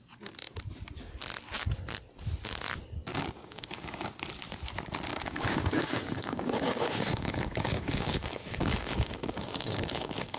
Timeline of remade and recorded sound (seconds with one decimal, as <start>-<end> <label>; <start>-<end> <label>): 0.0-3.1 recorded; 3.1-4.1 remade; 4.1-5.1 recorded; 5.1-10.4 remade